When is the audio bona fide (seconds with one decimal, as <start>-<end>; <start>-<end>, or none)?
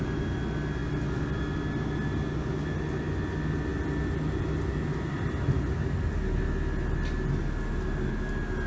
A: 0.0-8.7